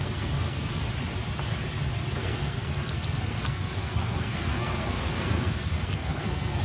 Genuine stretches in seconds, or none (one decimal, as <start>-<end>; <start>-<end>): 0.8-2.2

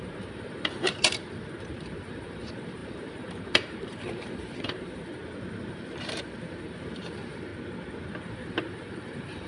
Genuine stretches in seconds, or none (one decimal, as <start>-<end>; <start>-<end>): 5.2-5.7; 7.5-8.2

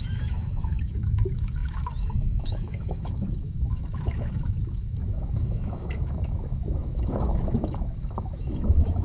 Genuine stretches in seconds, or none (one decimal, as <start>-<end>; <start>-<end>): none

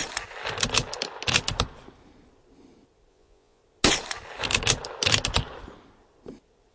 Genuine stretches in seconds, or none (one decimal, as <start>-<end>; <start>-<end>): 0.0-3.1; 3.6-6.7

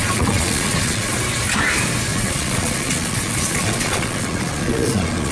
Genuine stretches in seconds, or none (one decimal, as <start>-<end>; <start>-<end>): 1.1-2.1